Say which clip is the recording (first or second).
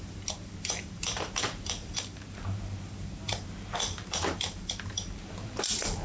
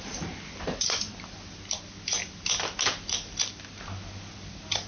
second